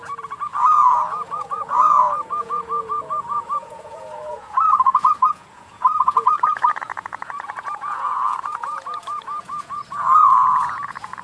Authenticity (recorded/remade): remade